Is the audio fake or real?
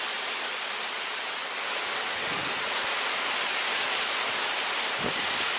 real